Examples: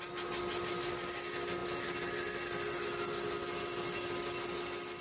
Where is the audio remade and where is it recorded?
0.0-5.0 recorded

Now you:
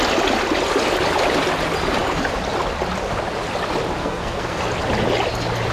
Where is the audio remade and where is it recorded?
0.0-4.0 recorded; 4.0-4.6 remade; 4.6-5.7 recorded

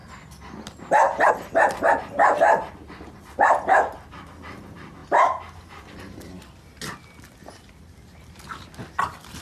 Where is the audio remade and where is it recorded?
0.0-9.4 recorded